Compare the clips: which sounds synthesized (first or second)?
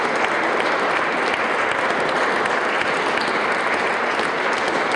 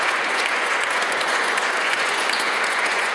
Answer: second